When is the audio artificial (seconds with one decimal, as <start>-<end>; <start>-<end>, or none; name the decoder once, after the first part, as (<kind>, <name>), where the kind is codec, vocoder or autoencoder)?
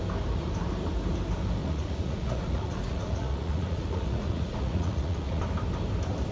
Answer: 1.6-5.4 (vocoder, Vocos)